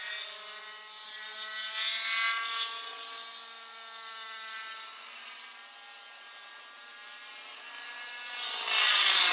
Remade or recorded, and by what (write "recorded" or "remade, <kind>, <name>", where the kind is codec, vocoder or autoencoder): recorded